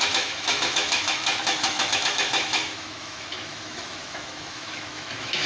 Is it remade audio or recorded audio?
remade